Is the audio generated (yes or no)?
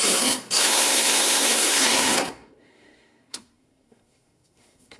yes